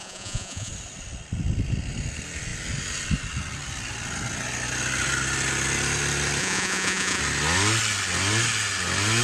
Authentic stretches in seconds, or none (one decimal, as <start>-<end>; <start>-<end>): 0.7-6.4; 7.2-9.2